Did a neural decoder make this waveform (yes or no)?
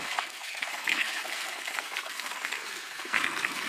yes